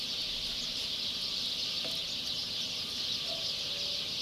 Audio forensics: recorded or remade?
recorded